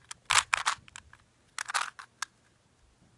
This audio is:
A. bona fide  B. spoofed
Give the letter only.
A